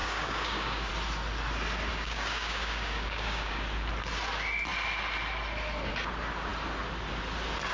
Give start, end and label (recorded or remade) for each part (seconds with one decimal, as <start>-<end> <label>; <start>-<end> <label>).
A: 0.0-0.9 remade; 0.9-1.9 recorded; 1.9-3.5 remade; 3.5-7.7 recorded